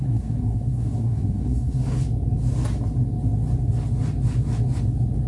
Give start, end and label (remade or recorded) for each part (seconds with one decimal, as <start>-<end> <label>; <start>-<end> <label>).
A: 0.0-1.8 remade; 1.8-5.3 recorded